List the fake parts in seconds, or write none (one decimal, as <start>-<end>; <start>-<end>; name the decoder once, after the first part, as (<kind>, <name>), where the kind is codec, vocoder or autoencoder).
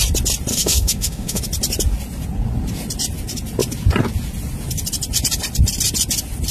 0.5-1.4 (autoencoder, DAC-VAE)